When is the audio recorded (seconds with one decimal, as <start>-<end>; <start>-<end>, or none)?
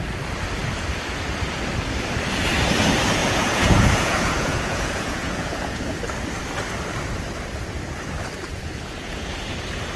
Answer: 0.0-3.2; 6.0-8.5; 9.3-10.0